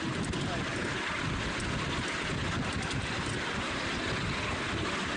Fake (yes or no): no